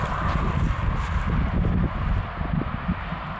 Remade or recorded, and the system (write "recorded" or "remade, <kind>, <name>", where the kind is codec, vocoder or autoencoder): recorded